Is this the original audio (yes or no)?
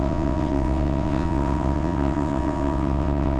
no